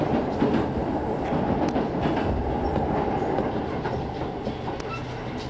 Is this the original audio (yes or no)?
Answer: yes